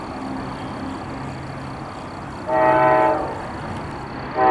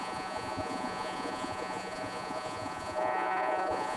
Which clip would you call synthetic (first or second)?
second